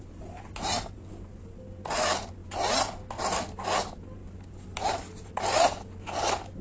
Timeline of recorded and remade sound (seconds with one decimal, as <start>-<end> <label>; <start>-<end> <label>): 0.0-6.6 recorded